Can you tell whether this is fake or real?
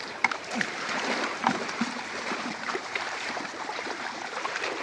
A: fake